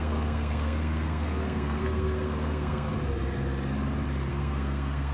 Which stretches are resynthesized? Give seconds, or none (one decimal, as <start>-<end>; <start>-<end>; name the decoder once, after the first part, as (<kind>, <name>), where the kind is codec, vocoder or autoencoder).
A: 0.0-2.9 (codec, SNAC); 4.3-5.1